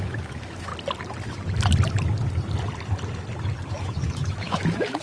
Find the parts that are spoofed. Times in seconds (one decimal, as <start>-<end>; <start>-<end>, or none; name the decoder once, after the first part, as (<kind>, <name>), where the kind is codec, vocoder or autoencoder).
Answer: 0.0-0.7 (autoencoder, DAC-VAE); 3.7-5.0